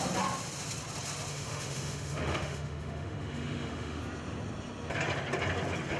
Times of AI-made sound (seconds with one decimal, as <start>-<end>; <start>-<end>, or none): 1.3-4.0